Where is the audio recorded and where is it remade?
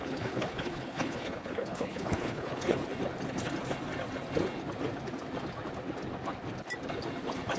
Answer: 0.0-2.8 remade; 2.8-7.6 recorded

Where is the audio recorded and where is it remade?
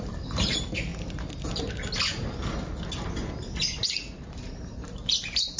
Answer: 0.0-0.9 remade; 0.9-4.3 recorded; 4.3-5.6 remade